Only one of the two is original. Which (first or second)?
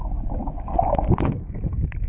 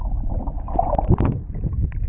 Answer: second